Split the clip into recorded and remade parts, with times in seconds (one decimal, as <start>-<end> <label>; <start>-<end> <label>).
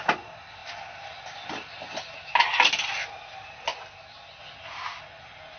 0.0-5.6 recorded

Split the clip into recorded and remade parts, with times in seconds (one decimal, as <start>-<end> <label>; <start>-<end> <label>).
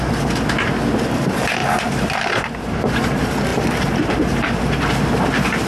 0.0-1.6 recorded; 1.6-2.8 remade; 2.8-3.5 recorded; 3.5-5.7 remade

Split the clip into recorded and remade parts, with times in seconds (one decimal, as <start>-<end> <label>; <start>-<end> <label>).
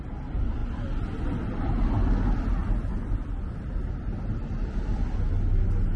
0.0-2.6 recorded; 2.6-3.6 remade; 3.6-6.0 recorded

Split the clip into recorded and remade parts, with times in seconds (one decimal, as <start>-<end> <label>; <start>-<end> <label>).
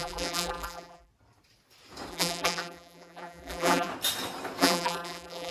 0.0-1.1 remade; 1.1-2.1 recorded; 2.1-3.9 remade; 3.9-4.6 recorded; 4.6-5.5 remade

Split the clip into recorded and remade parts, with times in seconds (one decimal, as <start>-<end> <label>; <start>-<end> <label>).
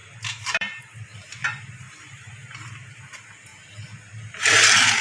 0.0-0.8 remade; 0.8-1.4 recorded; 1.4-3.0 remade; 3.0-5.0 recorded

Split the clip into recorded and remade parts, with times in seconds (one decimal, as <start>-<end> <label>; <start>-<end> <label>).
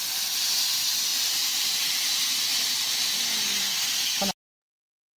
0.0-1.1 recorded; 1.1-1.7 remade; 1.7-5.2 recorded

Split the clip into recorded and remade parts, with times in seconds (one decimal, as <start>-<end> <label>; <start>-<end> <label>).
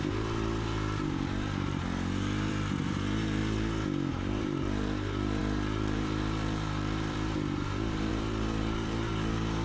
0.0-3.4 remade; 3.4-4.1 recorded; 4.1-9.6 remade